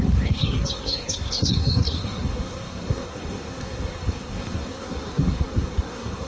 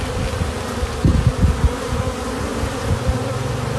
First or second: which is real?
second